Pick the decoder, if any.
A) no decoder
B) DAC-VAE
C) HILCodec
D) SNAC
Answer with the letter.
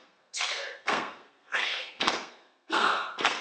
D